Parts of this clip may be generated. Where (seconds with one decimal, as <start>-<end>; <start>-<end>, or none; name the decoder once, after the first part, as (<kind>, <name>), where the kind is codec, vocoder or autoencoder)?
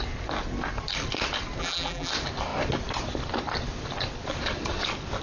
1.6-2.1 (vocoder, BigVGAN v2)